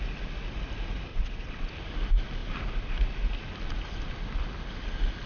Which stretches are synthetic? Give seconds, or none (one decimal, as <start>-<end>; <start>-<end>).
1.1-1.7